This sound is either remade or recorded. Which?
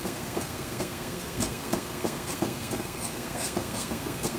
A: remade